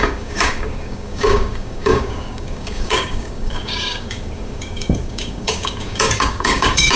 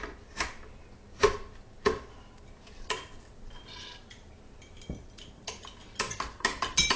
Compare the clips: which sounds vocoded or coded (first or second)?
first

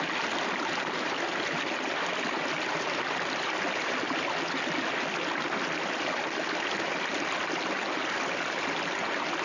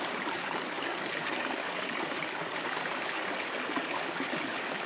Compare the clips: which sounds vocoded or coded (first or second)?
second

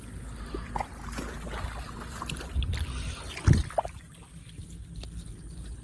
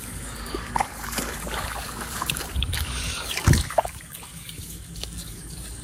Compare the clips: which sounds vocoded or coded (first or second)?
second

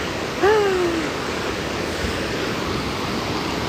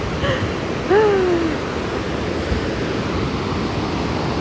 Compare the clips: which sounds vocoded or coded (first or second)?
first